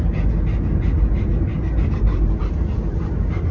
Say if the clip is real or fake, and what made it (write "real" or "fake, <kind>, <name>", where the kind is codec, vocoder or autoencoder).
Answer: real